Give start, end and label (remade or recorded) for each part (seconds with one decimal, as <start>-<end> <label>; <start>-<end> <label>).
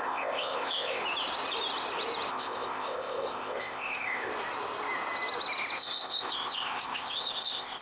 0.0-1.0 remade; 1.0-2.3 recorded; 2.3-4.3 remade; 4.3-5.8 recorded; 5.8-7.8 remade